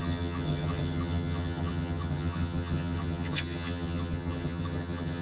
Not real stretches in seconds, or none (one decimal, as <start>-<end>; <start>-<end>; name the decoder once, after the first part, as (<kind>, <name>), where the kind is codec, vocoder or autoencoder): 0.0-5.2 (vocoder, HiFi-GAN)